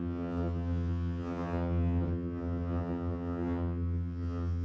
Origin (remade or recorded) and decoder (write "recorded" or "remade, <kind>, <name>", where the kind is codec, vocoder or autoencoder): remade, vocoder, HiFi-GAN